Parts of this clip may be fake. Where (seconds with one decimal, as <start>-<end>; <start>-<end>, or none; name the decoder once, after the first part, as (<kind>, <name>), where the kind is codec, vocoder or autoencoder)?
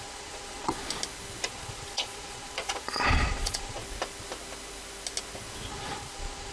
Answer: 0.0-0.8 (vocoder, Vocos); 1.5-3.8; 5.7-6.5